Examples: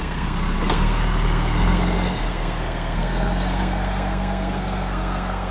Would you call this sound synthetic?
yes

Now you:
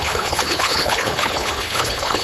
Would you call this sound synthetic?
yes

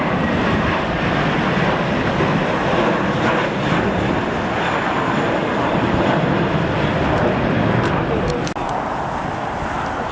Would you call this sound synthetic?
no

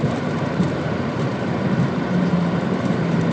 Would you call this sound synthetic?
yes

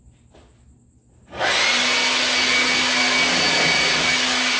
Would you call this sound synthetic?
no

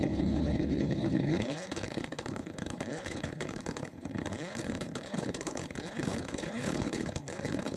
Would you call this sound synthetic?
yes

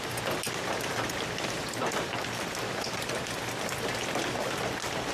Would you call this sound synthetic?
no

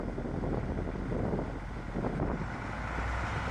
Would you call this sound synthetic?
no